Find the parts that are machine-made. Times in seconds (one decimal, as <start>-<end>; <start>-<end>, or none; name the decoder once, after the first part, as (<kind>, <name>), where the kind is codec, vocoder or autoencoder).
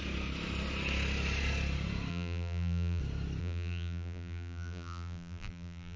2.1-3.0 (vocoder, BigVGAN v2); 3.4-6.0